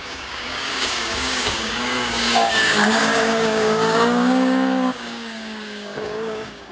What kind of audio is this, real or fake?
fake